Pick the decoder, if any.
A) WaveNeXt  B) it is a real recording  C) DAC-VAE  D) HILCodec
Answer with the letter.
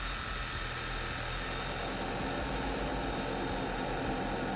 B